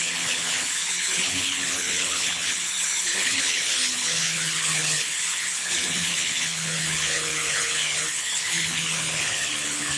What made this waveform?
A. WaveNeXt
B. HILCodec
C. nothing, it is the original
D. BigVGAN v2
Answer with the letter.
B